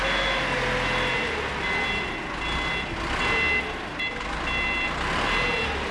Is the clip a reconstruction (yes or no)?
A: no